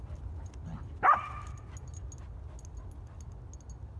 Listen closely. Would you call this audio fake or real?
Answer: real